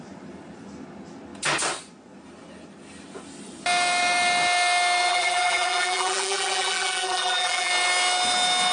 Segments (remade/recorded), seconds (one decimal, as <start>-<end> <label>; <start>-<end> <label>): 0.0-5.1 recorded; 5.1-7.7 remade; 7.7-8.7 recorded